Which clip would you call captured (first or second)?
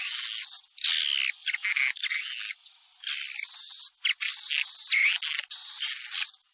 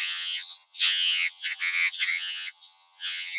first